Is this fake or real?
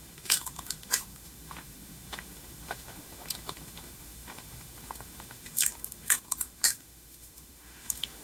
fake